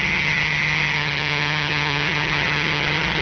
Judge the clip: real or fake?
fake